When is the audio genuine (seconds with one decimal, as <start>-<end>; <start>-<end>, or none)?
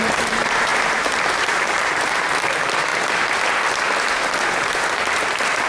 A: 2.9-4.1